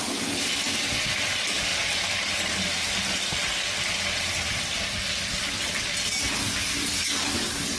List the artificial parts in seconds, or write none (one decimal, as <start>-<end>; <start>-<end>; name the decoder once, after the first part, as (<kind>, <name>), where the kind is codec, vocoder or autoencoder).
none